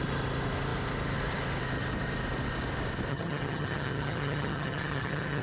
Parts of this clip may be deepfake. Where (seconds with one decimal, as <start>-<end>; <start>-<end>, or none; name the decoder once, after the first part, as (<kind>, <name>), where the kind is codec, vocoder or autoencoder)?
3.1-5.4 (vocoder, HiFi-GAN)